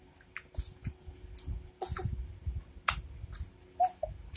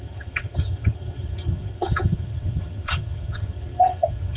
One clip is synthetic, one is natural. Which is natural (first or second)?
first